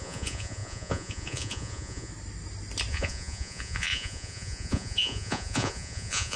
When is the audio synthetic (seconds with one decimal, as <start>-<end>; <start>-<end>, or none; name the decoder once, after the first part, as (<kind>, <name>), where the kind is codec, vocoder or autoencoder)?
0.0-2.1 (vocoder, Vocos); 2.9-6.4